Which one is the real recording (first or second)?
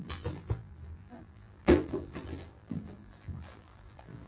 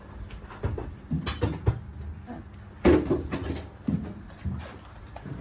second